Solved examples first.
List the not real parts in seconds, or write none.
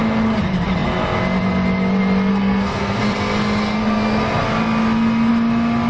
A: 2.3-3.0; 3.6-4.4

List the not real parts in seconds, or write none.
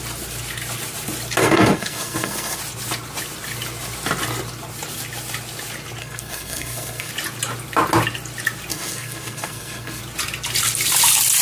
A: 1.4-2.6; 6.0-7.1; 8.7-10.0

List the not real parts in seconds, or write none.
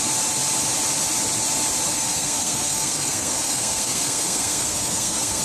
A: 1.9-5.4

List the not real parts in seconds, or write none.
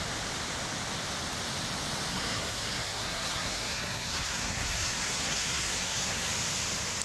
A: 2.1-6.3